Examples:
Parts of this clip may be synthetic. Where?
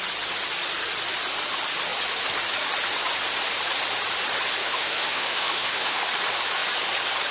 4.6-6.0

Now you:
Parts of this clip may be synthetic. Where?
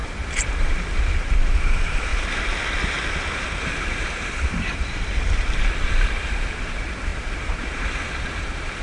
0.0-2.1; 3.6-8.8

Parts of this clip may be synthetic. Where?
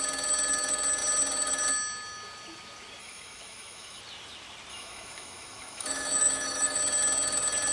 3.0-4.0; 4.7-6.8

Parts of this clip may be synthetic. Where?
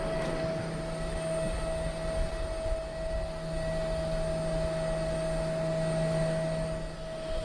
none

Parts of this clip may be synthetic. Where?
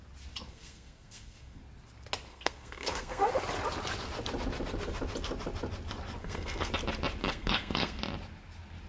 0.4-1.6; 2.3-3.3; 6.2-6.7; 7.2-8.0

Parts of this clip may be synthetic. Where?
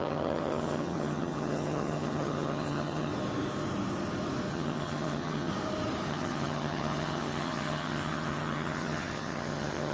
0.0-3.1; 4.5-5.5; 6.1-9.9